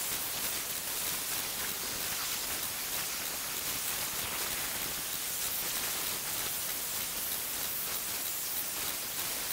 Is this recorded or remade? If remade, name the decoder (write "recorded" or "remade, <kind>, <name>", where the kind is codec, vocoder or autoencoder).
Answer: recorded